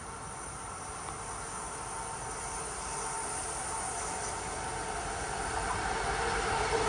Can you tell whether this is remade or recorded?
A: recorded